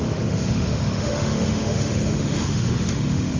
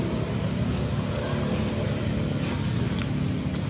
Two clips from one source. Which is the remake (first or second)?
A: first